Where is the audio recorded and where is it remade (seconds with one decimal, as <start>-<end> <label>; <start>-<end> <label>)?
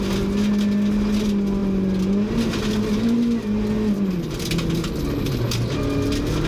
0.0-6.5 recorded